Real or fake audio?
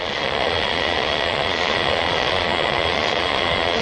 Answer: fake